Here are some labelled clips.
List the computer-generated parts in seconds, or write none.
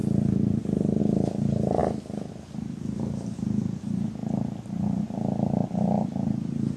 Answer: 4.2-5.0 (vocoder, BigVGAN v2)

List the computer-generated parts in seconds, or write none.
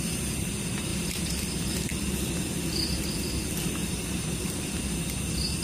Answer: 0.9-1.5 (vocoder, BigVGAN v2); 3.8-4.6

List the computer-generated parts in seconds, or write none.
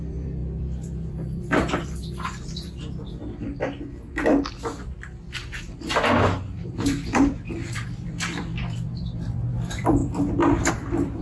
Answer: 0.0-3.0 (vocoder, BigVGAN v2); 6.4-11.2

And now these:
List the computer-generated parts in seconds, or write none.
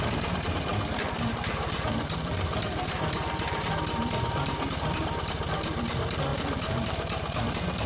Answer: 0.0-7.9 (vocoder, BigVGAN v2)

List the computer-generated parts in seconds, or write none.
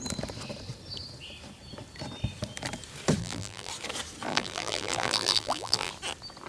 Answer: 3.2-3.7 (vocoder, BigVGAN v2); 4.3-5.9